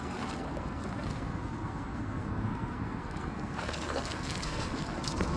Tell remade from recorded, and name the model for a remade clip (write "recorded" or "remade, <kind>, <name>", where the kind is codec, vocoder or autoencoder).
remade, codec, SNAC